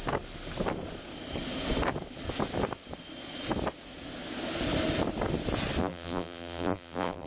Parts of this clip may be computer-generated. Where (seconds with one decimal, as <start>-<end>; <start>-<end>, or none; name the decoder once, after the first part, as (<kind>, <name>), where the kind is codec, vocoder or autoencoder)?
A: 5.8-7.3 (vocoder, BigVGAN v2)